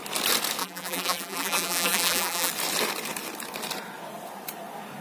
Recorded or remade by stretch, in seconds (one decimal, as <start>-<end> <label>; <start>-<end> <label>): 0.0-0.6 recorded; 0.6-2.5 remade; 2.5-5.0 recorded